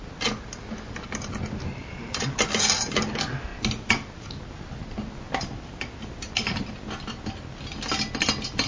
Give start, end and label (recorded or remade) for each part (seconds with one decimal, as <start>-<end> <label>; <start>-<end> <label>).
0.0-8.7 recorded